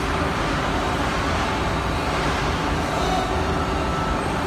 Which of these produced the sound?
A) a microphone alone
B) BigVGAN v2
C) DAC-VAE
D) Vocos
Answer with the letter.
A